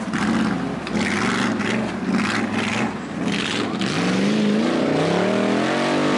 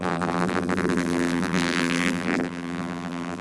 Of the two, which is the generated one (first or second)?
second